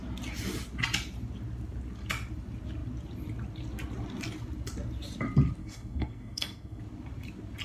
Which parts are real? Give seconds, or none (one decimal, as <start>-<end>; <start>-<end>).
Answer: 0.0-5.6; 6.8-7.6

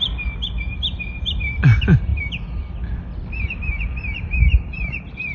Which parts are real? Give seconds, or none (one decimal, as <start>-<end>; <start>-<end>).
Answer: 0.0-5.3

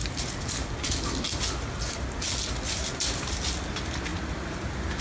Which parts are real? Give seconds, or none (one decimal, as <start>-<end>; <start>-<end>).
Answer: 0.0-5.0